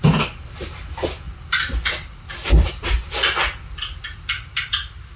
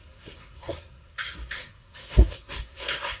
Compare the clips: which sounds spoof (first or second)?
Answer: second